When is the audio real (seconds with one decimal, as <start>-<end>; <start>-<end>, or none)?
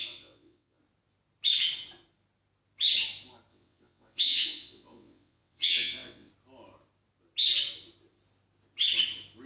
0.8-3.5; 6.3-9.5